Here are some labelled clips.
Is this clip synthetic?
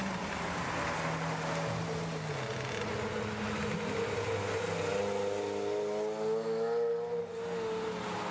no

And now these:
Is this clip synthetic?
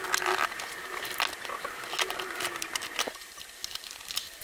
no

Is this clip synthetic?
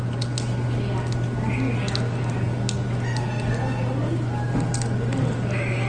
no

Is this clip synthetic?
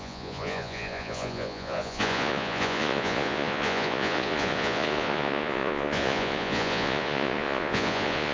yes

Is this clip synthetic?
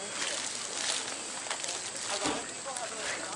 no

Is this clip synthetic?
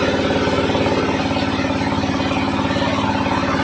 no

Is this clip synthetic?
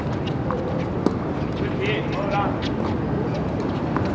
no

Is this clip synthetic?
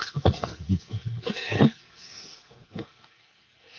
yes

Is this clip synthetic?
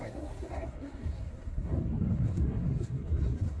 yes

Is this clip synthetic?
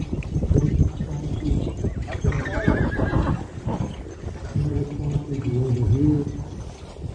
no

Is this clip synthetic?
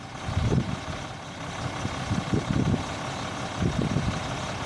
no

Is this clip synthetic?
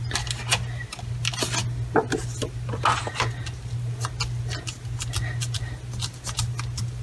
no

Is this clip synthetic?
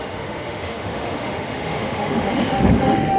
yes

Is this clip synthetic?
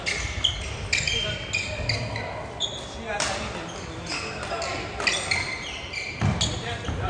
no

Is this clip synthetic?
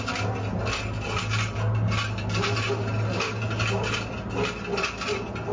no